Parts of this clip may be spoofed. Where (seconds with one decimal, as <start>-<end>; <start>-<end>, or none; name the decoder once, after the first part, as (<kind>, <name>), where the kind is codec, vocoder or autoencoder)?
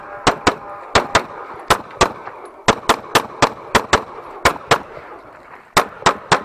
none